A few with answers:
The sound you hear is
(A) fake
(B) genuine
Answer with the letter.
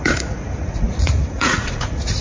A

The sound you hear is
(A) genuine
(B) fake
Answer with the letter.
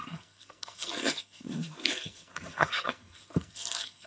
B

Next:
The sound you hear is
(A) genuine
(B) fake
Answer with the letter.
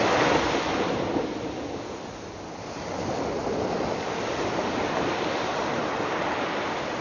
A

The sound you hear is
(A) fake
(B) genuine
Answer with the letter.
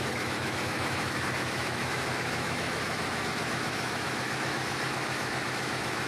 A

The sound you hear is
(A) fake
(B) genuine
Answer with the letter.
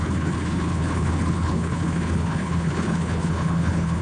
A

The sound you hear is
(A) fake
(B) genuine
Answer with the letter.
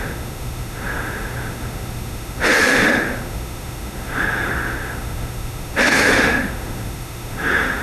A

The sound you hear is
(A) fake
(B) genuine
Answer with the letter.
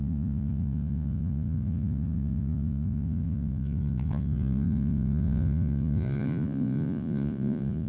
A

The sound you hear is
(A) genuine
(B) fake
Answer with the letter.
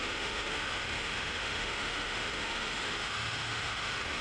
B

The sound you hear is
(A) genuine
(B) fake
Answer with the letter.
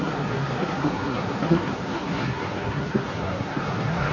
B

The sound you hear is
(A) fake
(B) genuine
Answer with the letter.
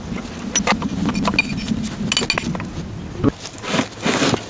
B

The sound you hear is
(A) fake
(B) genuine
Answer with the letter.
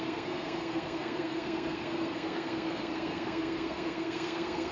A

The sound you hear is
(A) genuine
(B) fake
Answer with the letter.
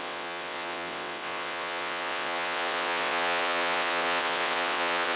B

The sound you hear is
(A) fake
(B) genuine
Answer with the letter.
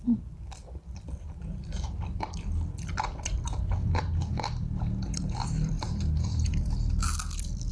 A